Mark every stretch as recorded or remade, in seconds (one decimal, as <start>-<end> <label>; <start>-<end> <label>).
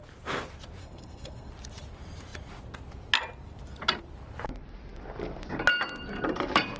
0.0-0.8 recorded; 0.8-1.5 remade; 1.5-6.8 recorded